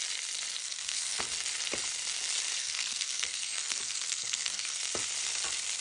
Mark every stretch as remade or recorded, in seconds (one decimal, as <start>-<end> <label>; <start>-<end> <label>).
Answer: 0.0-0.6 recorded; 0.6-1.2 remade; 1.2-2.6 recorded; 2.6-4.8 remade; 4.8-5.8 recorded